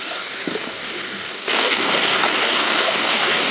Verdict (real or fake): fake